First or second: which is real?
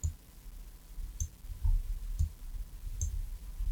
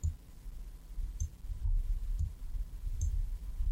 first